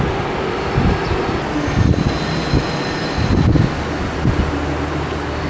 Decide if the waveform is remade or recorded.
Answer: recorded